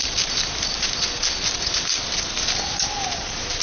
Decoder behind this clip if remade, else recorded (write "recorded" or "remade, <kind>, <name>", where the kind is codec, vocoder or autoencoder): recorded